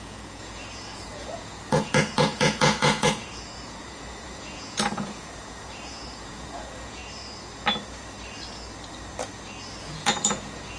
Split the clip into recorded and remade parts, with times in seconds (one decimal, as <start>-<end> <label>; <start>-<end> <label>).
0.0-7.0 remade; 7.0-9.8 recorded; 9.8-10.8 remade